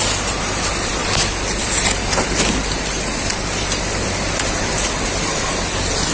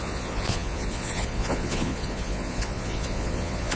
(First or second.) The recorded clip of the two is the first